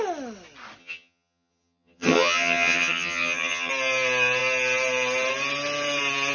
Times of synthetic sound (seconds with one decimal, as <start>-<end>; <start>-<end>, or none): 0.8-3.7